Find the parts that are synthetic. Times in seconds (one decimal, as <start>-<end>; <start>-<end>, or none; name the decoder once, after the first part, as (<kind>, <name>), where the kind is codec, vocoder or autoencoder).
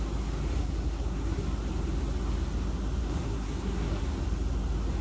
0.6-1.4 (codec, SNAC); 3.0-4.0